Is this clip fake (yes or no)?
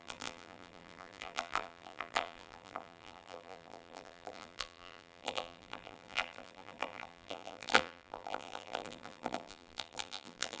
yes